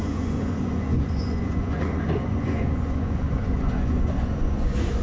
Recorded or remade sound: remade